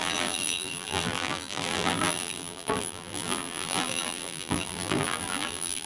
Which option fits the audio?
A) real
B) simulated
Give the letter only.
B